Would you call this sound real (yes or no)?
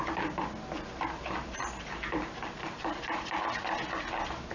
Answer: yes